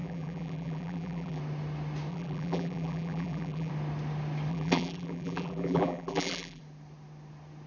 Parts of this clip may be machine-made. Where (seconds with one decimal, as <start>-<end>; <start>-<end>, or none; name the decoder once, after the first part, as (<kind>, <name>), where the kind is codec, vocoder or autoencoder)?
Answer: 0.0-1.4 (vocoder, BigVGAN v2); 2.1-3.7; 4.5-6.6